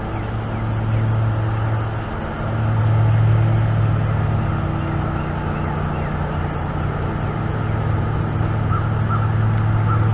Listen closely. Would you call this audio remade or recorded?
recorded